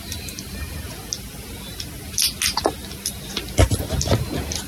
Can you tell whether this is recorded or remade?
recorded